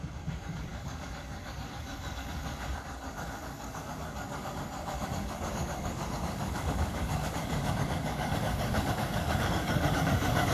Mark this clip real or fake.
fake